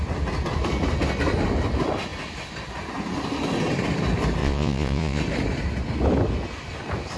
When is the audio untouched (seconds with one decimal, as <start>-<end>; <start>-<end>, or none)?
0.0-4.4; 5.2-7.2